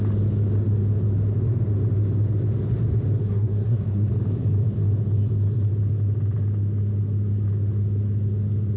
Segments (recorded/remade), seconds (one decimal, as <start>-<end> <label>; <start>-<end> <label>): 0.0-3.2 recorded; 3.2-4.1 remade; 4.1-8.8 recorded